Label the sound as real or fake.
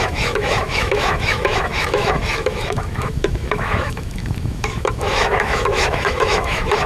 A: fake